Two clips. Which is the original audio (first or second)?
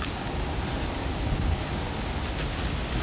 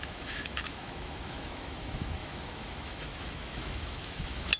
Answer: first